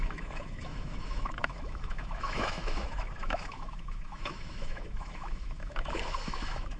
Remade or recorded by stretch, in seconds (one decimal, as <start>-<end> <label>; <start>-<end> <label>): 0.0-6.8 remade